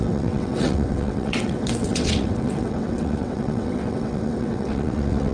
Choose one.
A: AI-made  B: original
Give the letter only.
A